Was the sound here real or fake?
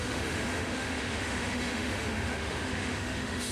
fake